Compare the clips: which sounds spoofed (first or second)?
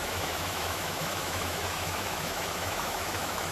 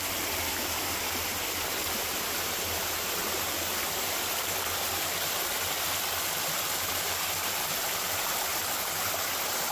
first